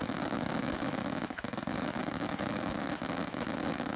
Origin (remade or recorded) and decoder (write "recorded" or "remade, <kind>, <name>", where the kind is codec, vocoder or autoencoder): remade, autoencoder, DAC-VAE